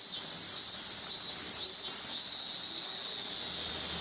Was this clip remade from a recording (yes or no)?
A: no